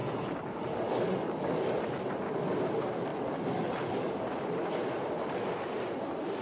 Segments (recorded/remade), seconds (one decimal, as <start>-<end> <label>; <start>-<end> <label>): 0.0-6.4 recorded